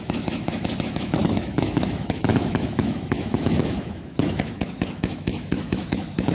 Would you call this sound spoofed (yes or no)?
yes